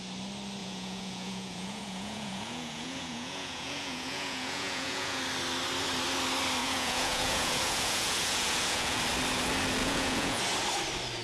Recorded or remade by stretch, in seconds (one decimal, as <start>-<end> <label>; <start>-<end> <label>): 0.0-0.6 recorded; 0.6-5.2 remade; 5.2-6.6 recorded; 6.6-9.0 remade; 9.0-9.8 recorded; 9.8-10.4 remade; 10.4-11.2 recorded